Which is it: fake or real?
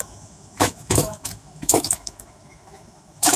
fake